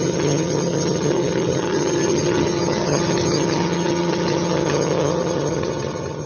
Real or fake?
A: fake